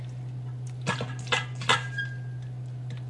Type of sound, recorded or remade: recorded